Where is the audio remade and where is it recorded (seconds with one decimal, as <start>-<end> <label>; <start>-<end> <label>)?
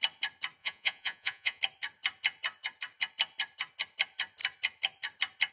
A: 0.0-0.6 recorded; 0.6-1.6 remade; 1.6-5.5 recorded